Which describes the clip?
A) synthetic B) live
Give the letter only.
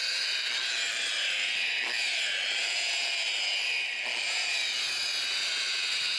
B